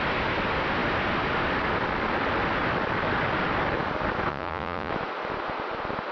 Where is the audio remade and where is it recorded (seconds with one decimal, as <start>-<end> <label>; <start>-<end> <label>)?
0.0-4.3 recorded; 4.3-4.9 remade; 4.9-6.1 recorded